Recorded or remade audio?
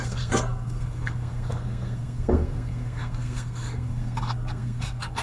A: remade